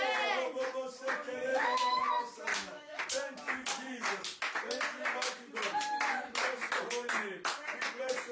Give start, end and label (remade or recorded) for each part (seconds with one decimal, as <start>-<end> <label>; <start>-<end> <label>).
0.0-1.5 recorded; 1.5-2.0 remade; 2.0-2.5 recorded; 2.5-3.0 remade; 3.0-8.3 recorded

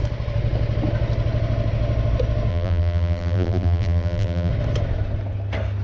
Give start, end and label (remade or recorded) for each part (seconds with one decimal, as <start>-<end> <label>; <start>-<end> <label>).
0.0-2.5 recorded; 2.5-4.5 remade; 4.5-5.8 recorded

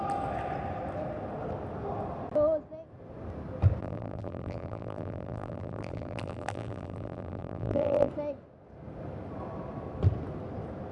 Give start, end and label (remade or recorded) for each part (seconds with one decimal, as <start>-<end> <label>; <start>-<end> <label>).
0.0-3.8 recorded; 3.8-8.1 remade; 8.1-10.9 recorded

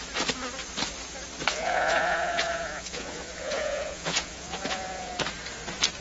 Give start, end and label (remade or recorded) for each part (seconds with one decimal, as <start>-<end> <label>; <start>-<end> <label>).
0.0-1.5 recorded; 1.5-5.1 remade; 5.1-6.0 recorded